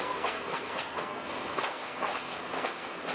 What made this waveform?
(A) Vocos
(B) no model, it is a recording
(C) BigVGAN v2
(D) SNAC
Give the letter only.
D